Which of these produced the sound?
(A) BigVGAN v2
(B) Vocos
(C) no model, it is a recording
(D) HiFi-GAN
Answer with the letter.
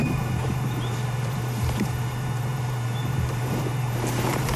A